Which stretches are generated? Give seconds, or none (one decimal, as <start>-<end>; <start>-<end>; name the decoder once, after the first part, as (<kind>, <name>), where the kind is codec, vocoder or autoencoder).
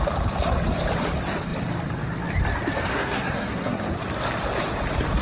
2.9-3.8 (codec, SNAC)